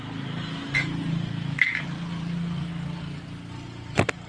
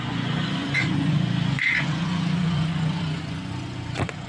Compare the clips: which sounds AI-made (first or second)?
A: second